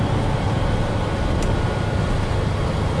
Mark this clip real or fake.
real